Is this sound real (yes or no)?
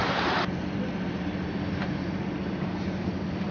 yes